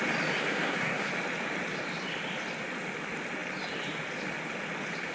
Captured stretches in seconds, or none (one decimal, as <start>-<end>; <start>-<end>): 0.0-0.4; 1.1-5.1